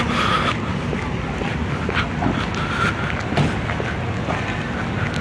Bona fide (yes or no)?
yes